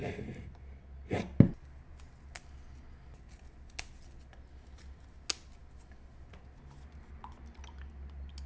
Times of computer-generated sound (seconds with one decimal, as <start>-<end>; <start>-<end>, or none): none